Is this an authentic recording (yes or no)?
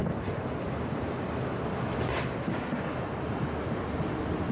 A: yes